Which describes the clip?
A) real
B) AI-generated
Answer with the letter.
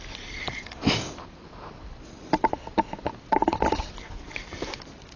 A